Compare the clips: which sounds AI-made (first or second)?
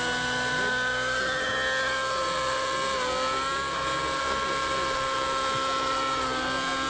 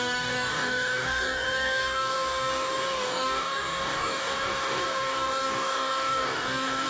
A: second